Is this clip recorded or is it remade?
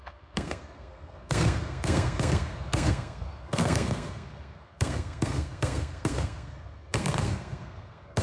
remade